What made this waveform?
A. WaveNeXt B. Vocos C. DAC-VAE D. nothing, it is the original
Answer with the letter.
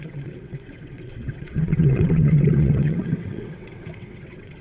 A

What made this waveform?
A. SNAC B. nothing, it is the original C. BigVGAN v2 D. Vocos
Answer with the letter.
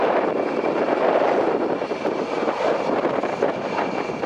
B